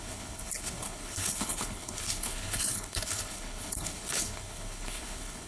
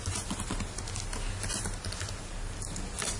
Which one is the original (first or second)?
second